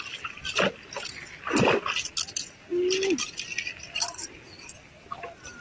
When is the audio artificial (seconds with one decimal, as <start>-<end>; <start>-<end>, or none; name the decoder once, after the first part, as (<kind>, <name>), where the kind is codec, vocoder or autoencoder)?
none